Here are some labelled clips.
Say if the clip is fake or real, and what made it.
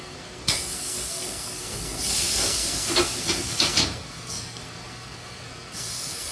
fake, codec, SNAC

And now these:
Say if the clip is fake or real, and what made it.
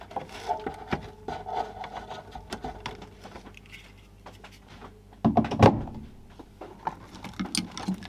real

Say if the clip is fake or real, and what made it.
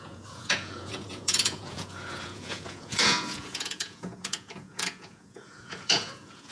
fake, vocoder, Vocos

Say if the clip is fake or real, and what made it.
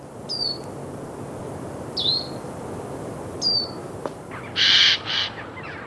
fake, vocoder, BigVGAN v2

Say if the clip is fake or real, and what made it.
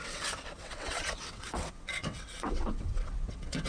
fake, vocoder, WaveNeXt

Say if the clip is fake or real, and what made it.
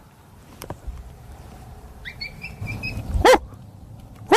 fake, vocoder, BigVGAN v2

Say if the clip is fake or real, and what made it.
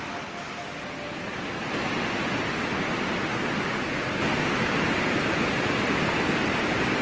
real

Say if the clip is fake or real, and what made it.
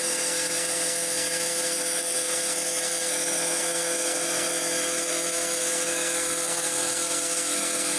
fake, codec, SNAC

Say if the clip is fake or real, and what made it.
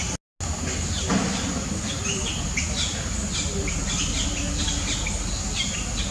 real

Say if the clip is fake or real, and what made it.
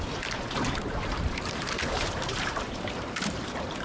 fake, vocoder, BigVGAN v2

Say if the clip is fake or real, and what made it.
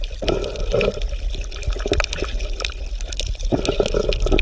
real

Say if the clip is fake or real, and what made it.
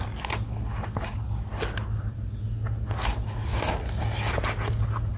real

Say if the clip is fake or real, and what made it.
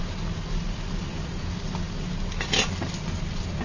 real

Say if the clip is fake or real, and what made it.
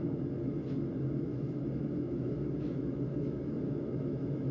fake, autoencoder, DAC-VAE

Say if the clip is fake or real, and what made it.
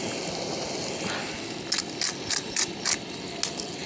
real